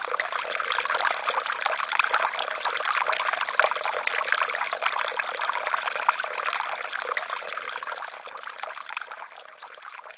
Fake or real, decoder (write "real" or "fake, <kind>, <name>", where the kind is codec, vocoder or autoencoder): real